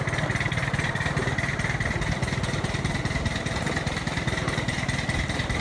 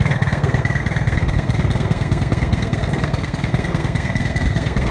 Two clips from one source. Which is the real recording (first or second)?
first